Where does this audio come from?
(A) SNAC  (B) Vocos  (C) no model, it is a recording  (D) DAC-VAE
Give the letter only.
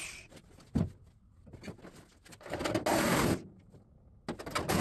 C